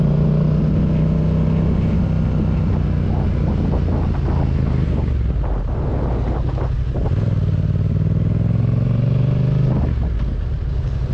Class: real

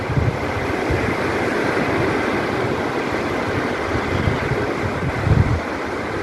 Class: real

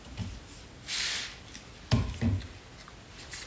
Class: real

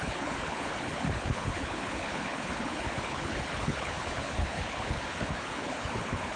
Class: fake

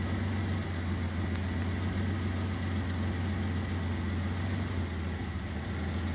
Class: real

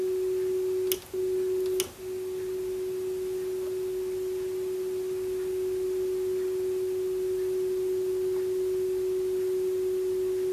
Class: real